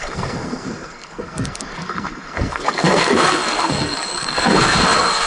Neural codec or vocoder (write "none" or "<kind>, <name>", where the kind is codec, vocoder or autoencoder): codec, SNAC